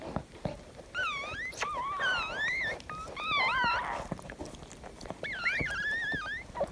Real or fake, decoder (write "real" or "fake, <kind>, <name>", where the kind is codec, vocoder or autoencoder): real